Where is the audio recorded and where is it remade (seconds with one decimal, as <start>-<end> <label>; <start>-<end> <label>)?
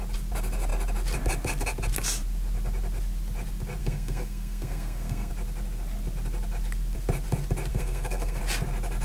0.0-3.8 recorded; 3.8-5.3 remade; 5.3-7.7 recorded; 7.7-8.4 remade; 8.4-9.0 recorded